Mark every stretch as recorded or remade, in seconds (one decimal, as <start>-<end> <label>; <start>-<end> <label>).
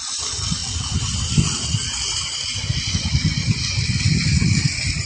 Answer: 0.0-5.1 recorded